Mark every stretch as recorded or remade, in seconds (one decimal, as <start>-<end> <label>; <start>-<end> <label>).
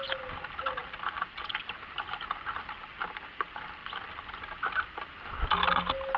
0.0-6.2 recorded